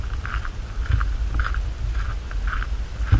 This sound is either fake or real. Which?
real